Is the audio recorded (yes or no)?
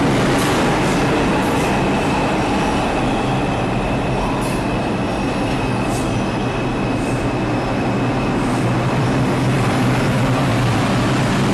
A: yes